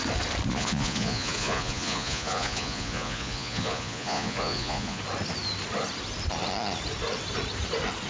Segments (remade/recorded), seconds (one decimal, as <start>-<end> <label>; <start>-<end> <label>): 0.0-0.5 recorded; 0.5-5.0 remade; 5.0-8.1 recorded